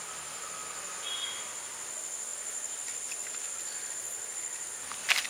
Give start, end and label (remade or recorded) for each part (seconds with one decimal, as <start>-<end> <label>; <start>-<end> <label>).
0.0-5.3 recorded